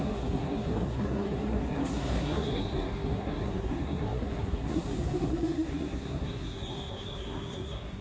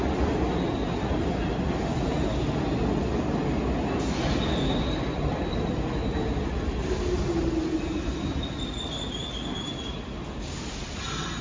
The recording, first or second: second